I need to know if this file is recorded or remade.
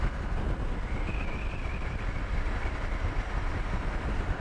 recorded